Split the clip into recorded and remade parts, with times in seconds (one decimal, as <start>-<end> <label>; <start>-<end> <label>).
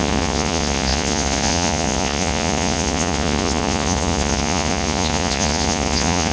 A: 0.0-6.3 remade